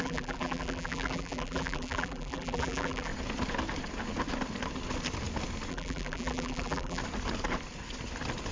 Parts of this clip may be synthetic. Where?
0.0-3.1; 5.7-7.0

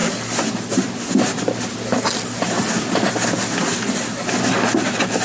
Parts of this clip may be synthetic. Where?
none

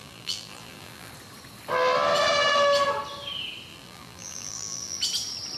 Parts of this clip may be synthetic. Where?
0.0-1.1; 3.7-5.0

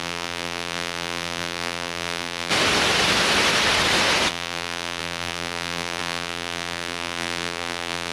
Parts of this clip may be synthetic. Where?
0.0-2.5; 4.3-8.1

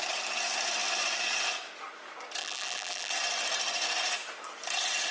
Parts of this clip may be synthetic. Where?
2.4-3.1

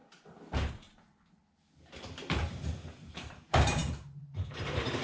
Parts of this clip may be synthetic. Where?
0.7-1.4; 2.4-5.0

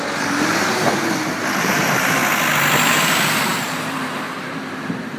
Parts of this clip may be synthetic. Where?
0.0-0.9; 1.6-2.2; 2.9-5.2

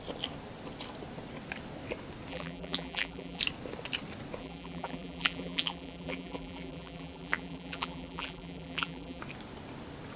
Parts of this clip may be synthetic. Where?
2.3-3.4; 4.4-9.2